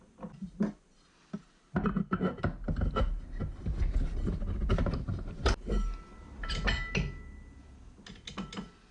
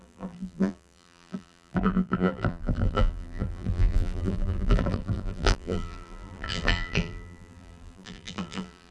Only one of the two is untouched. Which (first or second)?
first